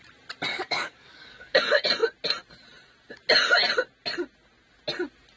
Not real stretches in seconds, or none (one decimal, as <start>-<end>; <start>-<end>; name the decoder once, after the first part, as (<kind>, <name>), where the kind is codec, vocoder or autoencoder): 0.5-1.6 (codec, DAC)